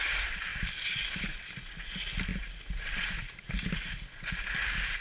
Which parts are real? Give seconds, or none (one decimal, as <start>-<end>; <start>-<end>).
0.0-5.0